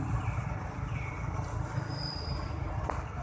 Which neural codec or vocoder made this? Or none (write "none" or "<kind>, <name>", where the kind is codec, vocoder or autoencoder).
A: none